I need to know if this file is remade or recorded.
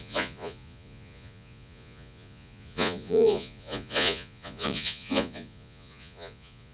remade